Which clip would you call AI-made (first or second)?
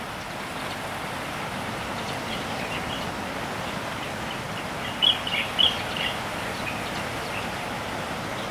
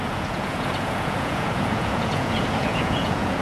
second